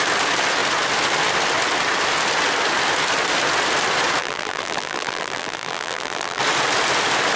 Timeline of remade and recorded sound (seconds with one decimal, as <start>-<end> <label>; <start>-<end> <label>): 0.0-4.2 recorded; 4.2-6.4 remade; 6.4-7.4 recorded